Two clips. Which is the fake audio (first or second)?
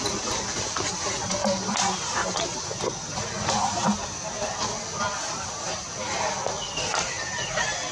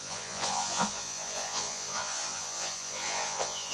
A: second